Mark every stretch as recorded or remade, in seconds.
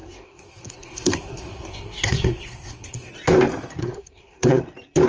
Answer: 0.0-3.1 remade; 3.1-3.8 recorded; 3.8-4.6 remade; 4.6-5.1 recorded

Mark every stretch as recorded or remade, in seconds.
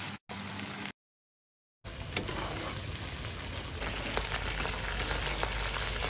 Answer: 0.0-6.1 recorded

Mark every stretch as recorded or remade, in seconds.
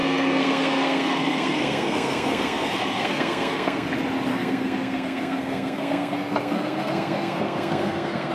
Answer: 0.0-3.9 remade; 3.9-4.3 recorded; 4.3-8.3 remade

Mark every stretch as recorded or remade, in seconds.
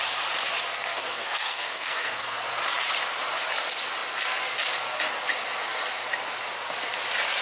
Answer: 0.0-1.0 recorded; 1.0-2.4 remade; 2.4-7.4 recorded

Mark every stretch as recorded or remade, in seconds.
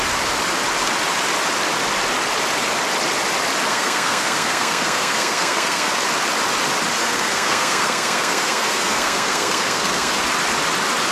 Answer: 0.0-3.7 recorded; 3.7-6.0 remade; 6.0-7.0 recorded; 7.0-10.1 remade; 10.1-11.1 recorded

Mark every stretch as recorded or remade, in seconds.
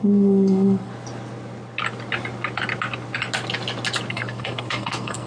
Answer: 0.0-0.9 remade; 0.9-4.1 recorded; 4.1-5.3 remade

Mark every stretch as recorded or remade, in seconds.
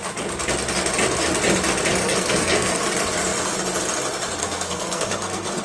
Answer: 0.0-2.0 recorded; 2.0-2.8 remade; 2.8-4.4 recorded; 4.4-5.6 remade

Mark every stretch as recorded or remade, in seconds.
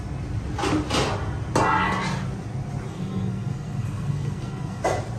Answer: 0.0-2.9 recorded; 2.9-4.8 remade; 4.8-5.2 recorded